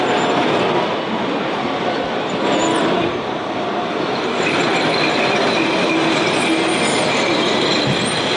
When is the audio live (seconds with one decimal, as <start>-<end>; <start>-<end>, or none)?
0.0-8.4